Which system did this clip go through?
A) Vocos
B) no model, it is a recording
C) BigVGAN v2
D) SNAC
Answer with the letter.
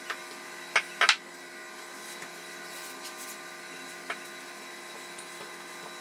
B